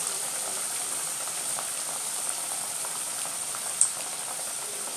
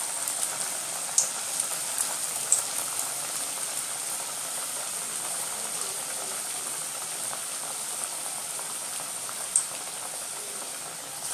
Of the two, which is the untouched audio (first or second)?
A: second